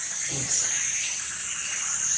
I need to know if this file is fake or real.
real